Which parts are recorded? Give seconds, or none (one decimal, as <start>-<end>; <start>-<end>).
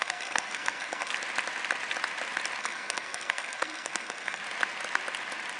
1.1-2.6; 4.4-5.6